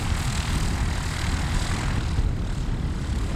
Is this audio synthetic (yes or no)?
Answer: no